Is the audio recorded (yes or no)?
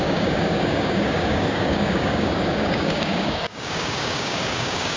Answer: no